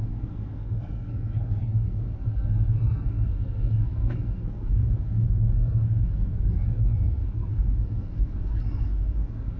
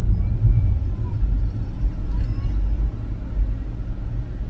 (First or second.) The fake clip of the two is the first